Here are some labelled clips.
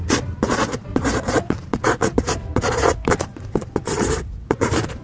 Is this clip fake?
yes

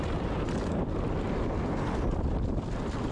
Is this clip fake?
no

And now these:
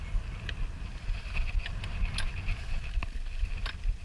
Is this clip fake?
no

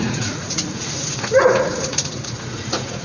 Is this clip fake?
yes